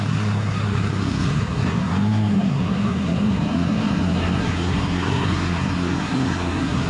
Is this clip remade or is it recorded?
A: remade